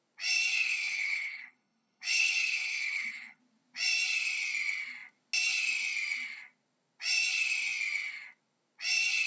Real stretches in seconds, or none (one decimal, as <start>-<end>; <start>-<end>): 0.0-0.5; 3.4-9.3